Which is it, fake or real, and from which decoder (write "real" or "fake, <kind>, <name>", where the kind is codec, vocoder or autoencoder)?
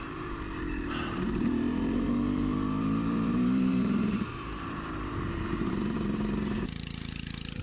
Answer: fake, vocoder, BigVGAN v2